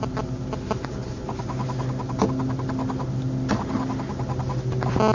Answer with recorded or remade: recorded